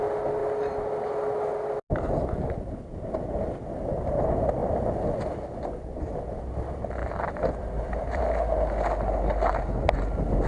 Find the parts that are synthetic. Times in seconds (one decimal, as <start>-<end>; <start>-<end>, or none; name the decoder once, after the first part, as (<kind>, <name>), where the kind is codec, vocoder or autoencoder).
4.6-6.1 (vocoder, BigVGAN v2); 7.0-8.2